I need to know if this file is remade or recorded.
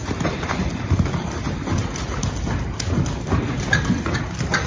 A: recorded